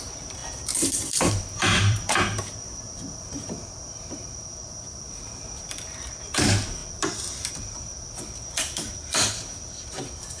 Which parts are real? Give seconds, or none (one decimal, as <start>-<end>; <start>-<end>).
6.8-7.5; 7.9-8.6